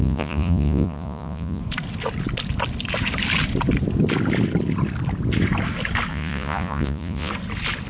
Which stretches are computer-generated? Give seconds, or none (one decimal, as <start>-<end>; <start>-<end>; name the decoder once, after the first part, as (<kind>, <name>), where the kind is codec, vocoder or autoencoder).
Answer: 0.0-1.6 (vocoder, Vocos); 6.1-7.3